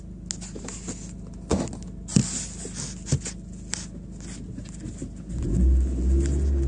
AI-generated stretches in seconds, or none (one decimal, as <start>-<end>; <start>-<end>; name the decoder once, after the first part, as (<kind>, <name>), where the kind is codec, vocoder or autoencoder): none